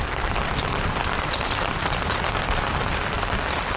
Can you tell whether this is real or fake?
real